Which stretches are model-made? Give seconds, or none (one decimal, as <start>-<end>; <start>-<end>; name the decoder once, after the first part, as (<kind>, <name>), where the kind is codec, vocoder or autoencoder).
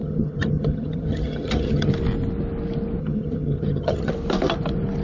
0.0-1.9 (vocoder, HiFi-GAN); 3.0-4.1